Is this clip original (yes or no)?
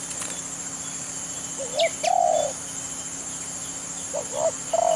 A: yes